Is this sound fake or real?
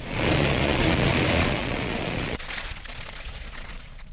fake